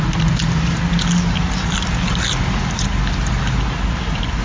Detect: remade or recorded recorded